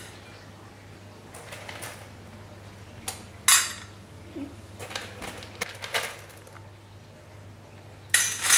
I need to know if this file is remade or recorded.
recorded